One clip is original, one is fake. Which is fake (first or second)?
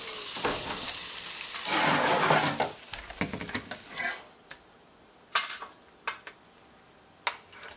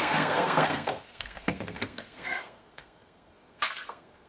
second